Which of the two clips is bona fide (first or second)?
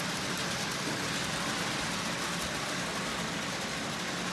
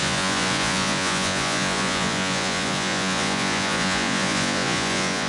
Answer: first